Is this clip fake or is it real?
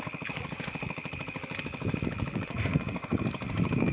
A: fake